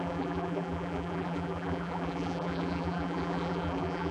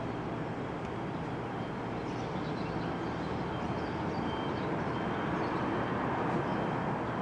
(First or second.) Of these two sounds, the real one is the second